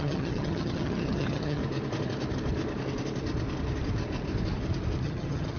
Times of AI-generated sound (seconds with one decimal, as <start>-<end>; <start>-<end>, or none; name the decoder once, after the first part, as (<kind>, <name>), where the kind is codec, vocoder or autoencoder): 0.0-1.6 (vocoder, HiFi-GAN); 5.0-5.6